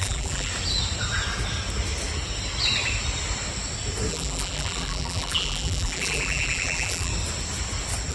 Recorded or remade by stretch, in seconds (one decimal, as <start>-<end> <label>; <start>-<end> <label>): 0.0-0.5 remade; 0.5-4.1 recorded; 4.1-7.1 remade; 7.1-8.1 recorded